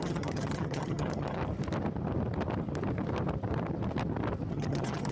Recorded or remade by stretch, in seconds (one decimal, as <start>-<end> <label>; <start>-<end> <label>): 0.0-1.4 remade; 1.4-4.5 recorded; 4.5-5.1 remade